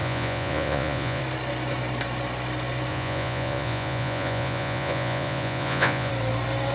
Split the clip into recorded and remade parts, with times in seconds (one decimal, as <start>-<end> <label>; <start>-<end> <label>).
0.0-1.2 remade; 1.2-2.9 recorded; 2.9-6.1 remade; 6.1-6.7 recorded